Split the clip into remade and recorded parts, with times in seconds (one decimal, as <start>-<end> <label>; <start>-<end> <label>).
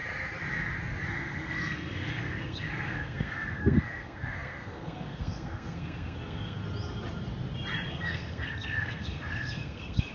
0.0-1.1 recorded; 1.1-6.6 remade; 6.6-7.9 recorded; 7.9-10.1 remade